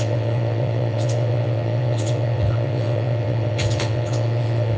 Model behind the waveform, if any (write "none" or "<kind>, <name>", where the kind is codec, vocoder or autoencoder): vocoder, WaveNeXt